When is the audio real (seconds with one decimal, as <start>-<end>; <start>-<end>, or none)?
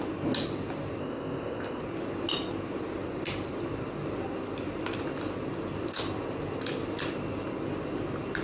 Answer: 0.0-1.0; 1.8-8.4